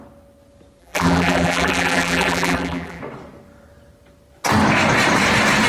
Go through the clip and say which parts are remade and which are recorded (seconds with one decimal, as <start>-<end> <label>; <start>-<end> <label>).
0.0-0.8 recorded; 0.8-3.0 remade; 3.0-5.7 recorded

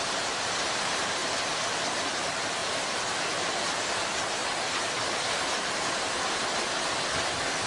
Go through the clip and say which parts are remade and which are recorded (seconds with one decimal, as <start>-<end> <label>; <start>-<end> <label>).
0.0-1.2 remade; 1.2-2.0 recorded; 2.0-4.4 remade; 4.4-7.1 recorded; 7.1-7.7 remade

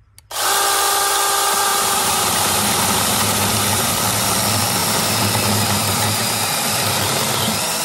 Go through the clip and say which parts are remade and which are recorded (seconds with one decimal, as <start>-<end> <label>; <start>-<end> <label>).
0.0-1.7 recorded; 1.7-4.0 remade; 4.0-4.8 recorded; 4.8-7.8 remade

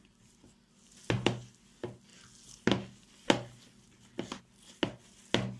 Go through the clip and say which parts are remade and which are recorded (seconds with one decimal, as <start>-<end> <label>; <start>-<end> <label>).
0.0-5.6 recorded

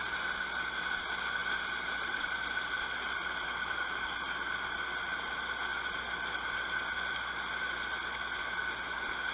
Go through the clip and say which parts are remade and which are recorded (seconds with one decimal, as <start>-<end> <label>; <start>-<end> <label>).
0.0-1.4 recorded; 1.4-2.1 remade; 2.1-9.3 recorded

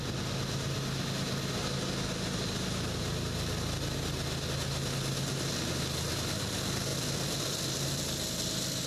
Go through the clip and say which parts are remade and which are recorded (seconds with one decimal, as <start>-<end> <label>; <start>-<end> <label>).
0.0-6.9 recorded; 6.9-8.0 remade; 8.0-8.9 recorded

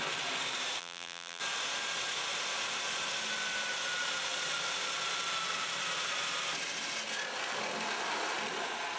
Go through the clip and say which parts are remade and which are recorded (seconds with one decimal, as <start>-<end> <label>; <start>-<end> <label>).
0.0-0.8 recorded; 0.8-1.4 remade; 1.4-9.0 recorded